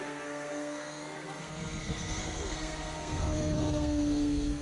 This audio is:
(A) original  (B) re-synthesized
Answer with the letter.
B